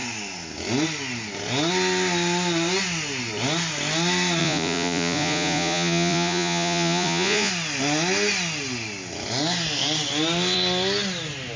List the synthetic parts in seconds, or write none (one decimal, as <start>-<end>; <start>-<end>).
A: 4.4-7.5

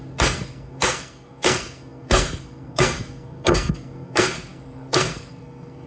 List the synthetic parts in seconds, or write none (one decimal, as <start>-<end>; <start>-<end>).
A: 0.0-5.9

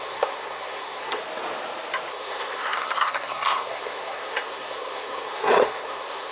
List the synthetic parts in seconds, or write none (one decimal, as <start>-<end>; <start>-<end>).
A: 0.0-1.2; 2.1-6.3